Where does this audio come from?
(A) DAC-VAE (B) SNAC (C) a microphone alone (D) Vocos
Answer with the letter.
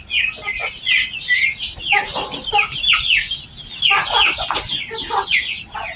C